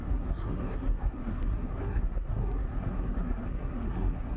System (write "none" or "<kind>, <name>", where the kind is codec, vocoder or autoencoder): codec, SNAC